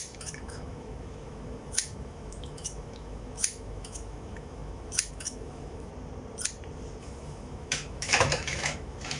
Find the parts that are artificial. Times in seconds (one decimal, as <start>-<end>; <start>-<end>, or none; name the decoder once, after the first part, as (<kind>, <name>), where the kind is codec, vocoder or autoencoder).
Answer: 0.0-5.9 (autoencoder, DAC-VAE); 7.0-9.2